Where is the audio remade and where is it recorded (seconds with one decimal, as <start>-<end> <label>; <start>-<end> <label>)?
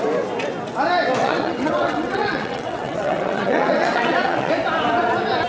0.0-1.2 recorded; 1.2-4.5 remade; 4.5-5.5 recorded